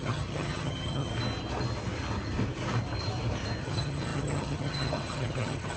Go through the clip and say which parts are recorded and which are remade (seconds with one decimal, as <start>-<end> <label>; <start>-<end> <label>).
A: 0.0-1.1 remade; 1.1-3.6 recorded; 3.6-5.8 remade